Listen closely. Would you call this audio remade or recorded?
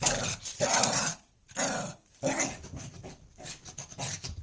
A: recorded